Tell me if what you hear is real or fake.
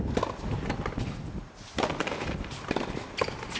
real